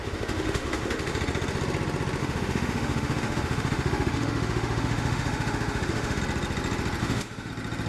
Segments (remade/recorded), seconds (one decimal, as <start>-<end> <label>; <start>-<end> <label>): 0.0-1.2 remade; 1.2-2.2 recorded; 2.2-6.2 remade; 6.2-7.0 recorded; 7.0-7.5 remade; 7.5-7.9 recorded